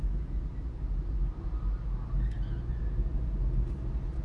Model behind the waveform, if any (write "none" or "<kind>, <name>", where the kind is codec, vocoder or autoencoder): none